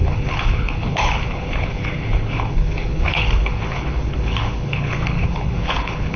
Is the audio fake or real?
fake